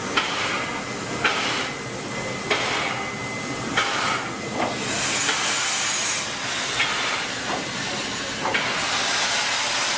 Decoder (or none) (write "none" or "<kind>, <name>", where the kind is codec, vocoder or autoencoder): none